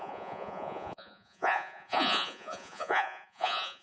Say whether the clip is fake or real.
fake